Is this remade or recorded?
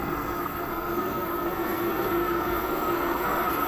remade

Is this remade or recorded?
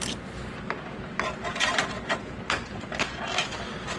recorded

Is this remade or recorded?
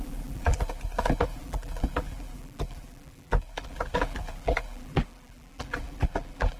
remade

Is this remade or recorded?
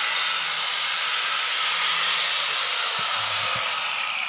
recorded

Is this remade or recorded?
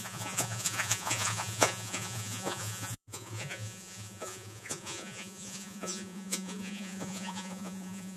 remade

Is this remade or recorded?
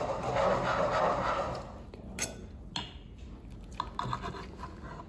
recorded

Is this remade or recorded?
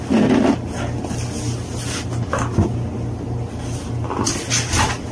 recorded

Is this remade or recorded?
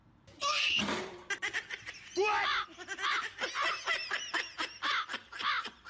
remade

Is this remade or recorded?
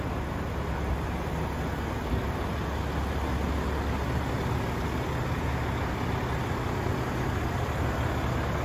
recorded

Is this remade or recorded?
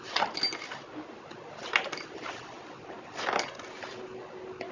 recorded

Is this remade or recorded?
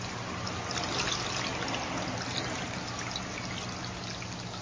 recorded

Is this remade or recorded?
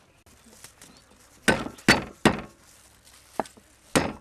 recorded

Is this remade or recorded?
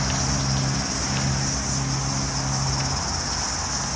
recorded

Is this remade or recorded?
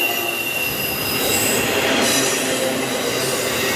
recorded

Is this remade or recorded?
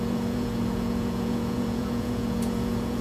remade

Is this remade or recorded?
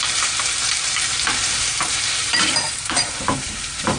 remade